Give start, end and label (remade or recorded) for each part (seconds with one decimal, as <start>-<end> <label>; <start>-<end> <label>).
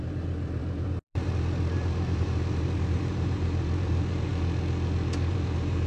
0.0-4.3 remade; 4.3-5.3 recorded; 5.3-5.9 remade